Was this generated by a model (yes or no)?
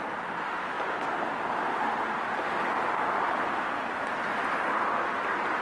no